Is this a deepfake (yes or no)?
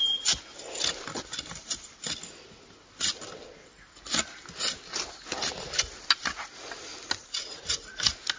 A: no